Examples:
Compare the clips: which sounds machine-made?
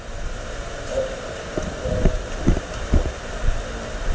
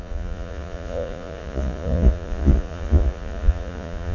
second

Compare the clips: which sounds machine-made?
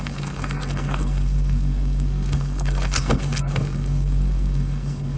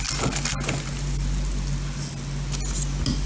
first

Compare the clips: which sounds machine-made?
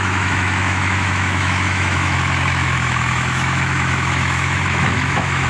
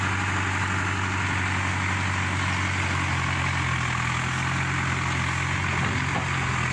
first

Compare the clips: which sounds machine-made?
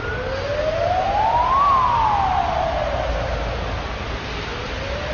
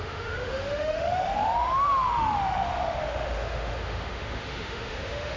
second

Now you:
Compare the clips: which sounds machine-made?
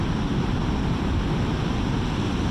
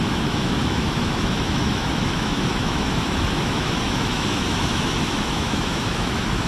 second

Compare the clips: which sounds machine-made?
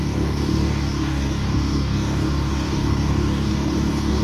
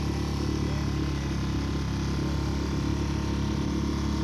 first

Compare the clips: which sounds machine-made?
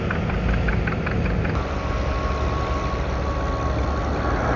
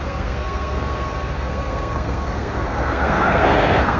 second